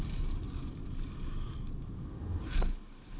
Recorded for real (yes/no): yes